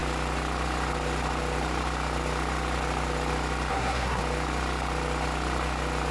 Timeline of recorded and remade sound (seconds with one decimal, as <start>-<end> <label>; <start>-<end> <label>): 0.0-3.7 recorded; 3.7-4.2 remade; 4.2-6.1 recorded